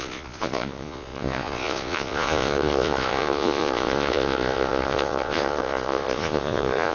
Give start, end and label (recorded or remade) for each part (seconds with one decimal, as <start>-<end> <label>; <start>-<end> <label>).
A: 0.0-6.9 remade